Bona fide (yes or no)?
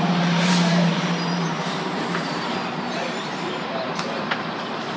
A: no